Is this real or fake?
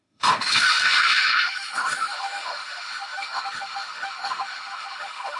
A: fake